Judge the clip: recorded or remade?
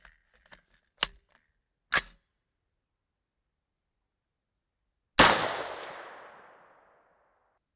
recorded